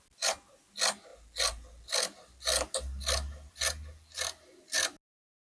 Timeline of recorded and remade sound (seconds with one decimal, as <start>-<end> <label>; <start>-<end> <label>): 0.0-5.4 recorded